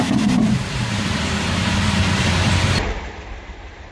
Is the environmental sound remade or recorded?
remade